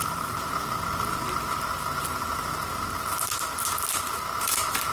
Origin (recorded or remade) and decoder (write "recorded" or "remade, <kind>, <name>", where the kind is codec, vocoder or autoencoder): remade, vocoder, BigVGAN v2